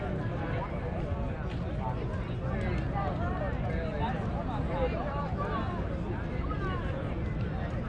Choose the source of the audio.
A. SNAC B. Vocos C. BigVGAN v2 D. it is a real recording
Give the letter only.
D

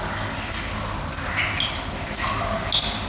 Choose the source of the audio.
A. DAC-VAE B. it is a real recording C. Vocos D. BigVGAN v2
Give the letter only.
B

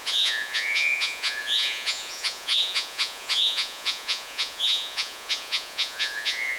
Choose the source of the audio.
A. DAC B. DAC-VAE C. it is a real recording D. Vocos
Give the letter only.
D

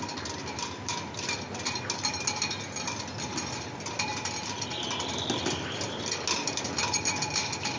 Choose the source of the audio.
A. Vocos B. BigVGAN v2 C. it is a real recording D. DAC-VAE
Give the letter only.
C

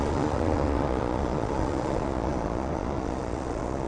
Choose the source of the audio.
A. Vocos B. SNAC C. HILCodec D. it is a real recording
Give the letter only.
A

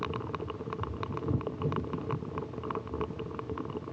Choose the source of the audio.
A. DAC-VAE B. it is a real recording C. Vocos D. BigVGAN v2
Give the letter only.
B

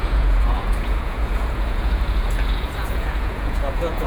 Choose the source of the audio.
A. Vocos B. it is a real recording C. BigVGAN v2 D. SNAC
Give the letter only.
A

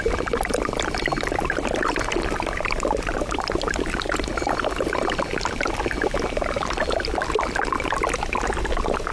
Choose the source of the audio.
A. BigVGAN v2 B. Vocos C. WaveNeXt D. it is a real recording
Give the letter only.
D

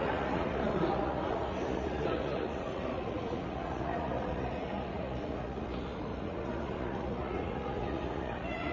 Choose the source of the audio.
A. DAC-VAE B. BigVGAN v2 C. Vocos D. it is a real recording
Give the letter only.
C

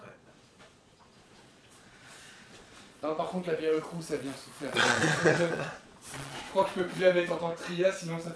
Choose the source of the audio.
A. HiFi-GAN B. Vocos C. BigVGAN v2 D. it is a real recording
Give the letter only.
B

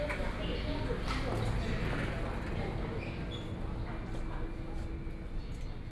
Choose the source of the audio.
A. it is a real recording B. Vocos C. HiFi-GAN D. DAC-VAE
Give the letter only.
A